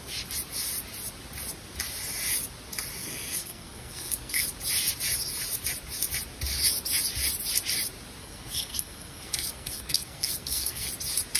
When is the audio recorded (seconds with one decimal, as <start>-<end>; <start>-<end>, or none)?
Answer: 0.0-3.0; 4.5-8.2; 10.9-11.4

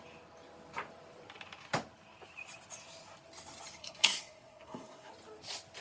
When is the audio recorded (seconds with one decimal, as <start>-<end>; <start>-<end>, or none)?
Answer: 0.0-3.8; 5.1-5.8